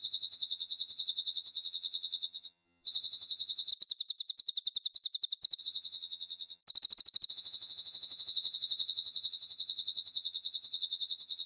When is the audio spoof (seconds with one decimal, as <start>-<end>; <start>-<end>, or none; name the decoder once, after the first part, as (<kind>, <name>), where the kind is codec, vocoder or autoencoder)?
0.0-3.7 (vocoder, HiFi-GAN); 5.6-6.6; 7.3-11.5

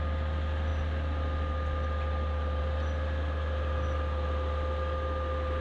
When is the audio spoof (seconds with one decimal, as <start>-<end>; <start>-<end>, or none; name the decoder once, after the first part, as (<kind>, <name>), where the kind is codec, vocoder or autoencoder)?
none